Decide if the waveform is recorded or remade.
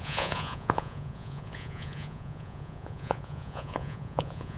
remade